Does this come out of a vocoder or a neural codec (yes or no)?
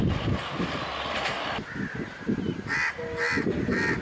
no